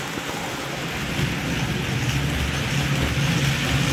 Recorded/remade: recorded